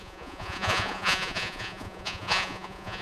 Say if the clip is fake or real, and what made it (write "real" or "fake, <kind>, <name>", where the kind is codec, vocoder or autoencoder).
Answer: fake, vocoder, Vocos